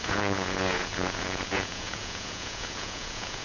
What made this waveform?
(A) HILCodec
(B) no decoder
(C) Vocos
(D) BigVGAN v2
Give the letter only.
C